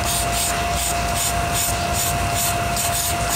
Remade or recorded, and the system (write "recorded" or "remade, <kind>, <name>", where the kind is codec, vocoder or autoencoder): recorded